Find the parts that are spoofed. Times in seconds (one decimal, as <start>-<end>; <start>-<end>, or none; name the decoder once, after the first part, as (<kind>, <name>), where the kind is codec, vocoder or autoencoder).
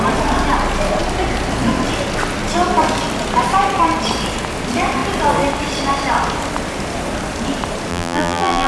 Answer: 7.9-8.7 (vocoder, BigVGAN v2)